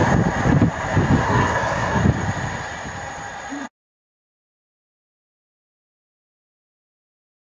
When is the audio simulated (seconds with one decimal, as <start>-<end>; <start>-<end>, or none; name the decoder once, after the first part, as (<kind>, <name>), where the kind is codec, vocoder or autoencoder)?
1.2-2.0 (codec, SNAC)